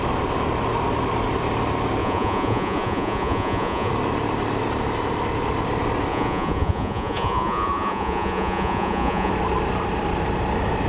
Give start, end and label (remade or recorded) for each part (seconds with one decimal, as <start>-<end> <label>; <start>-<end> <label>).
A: 0.0-2.0 recorded; 2.0-3.9 remade; 3.9-6.1 recorded; 6.1-9.3 remade; 9.3-10.9 recorded